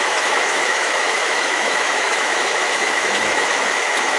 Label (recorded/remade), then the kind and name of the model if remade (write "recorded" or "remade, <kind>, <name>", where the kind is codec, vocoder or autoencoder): remade, autoencoder, DAC-VAE